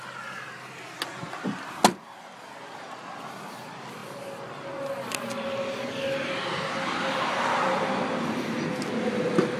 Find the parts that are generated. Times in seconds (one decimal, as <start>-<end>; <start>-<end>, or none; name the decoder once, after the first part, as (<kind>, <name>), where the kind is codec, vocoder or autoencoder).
none